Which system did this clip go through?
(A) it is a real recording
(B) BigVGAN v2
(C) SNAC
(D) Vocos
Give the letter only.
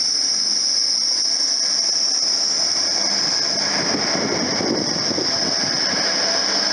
A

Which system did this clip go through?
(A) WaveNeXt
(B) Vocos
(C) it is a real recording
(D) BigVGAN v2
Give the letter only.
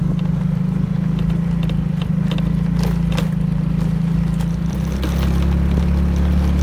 C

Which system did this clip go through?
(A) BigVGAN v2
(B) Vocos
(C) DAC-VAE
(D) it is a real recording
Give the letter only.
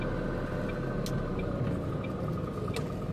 D